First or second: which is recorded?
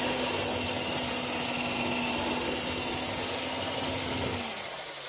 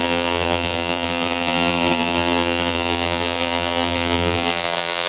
first